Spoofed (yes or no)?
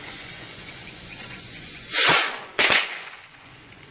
yes